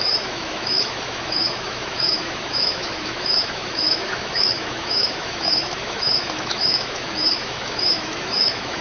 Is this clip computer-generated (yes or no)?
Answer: yes